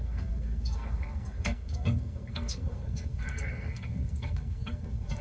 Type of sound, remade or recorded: remade